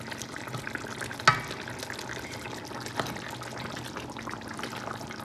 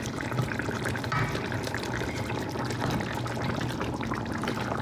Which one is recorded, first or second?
first